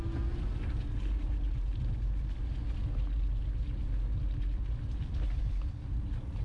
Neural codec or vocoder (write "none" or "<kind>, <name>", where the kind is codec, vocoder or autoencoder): none